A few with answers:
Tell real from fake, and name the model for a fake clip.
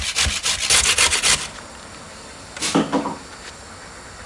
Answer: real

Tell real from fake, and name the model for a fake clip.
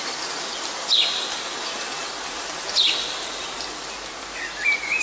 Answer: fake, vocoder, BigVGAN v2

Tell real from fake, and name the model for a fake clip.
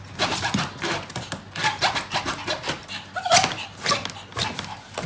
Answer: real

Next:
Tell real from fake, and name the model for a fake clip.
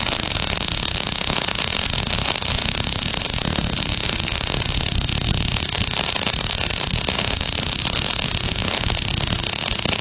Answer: real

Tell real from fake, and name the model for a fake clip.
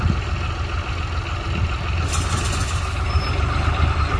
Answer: real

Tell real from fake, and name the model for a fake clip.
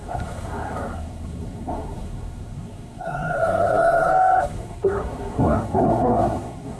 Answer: fake, codec, SNAC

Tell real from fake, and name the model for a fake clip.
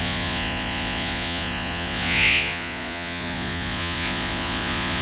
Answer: fake, vocoder, Vocos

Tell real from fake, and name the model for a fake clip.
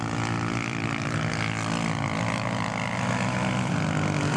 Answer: real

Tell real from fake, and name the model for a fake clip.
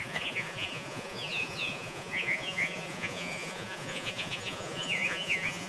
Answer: fake, vocoder, Vocos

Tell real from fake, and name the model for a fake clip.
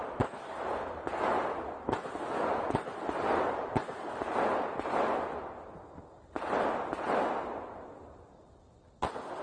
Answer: real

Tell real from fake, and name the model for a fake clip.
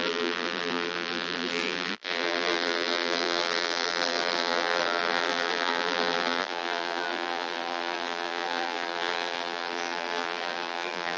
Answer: fake, vocoder, BigVGAN v2